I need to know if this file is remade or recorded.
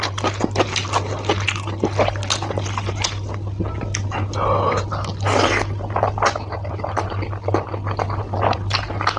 recorded